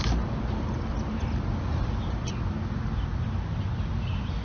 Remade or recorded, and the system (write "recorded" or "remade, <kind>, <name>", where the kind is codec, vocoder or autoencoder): recorded